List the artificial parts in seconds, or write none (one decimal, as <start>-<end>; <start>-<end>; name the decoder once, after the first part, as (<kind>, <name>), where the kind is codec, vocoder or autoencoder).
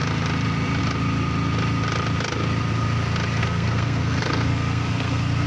3.4-5.5 (codec, SNAC)